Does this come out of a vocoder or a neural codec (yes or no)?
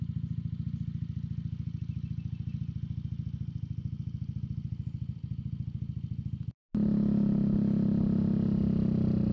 no